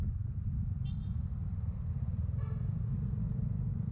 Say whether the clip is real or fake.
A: real